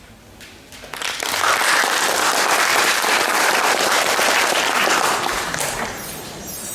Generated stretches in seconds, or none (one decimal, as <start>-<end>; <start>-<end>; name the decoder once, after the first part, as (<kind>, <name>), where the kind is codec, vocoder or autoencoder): 2.7-6.7 (vocoder, BigVGAN v2)